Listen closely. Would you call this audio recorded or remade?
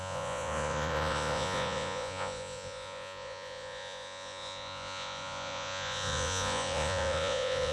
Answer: remade